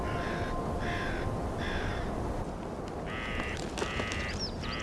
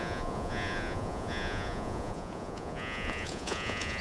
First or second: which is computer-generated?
second